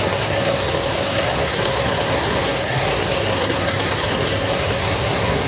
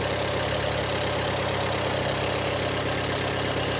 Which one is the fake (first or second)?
first